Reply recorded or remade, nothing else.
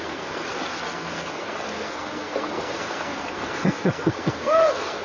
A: remade